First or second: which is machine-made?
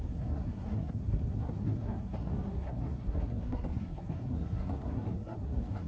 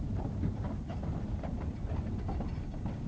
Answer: first